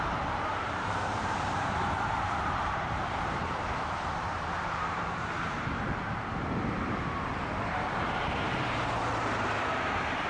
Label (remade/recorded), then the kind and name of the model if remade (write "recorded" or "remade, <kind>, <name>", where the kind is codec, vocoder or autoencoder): remade, vocoder, BigVGAN v2